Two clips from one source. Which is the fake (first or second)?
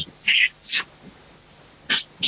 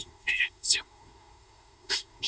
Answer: second